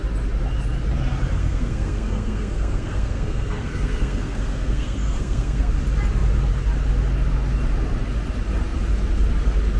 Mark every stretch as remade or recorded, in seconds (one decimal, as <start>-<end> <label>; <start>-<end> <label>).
0.0-1.4 recorded; 1.4-5.7 remade; 5.7-9.8 recorded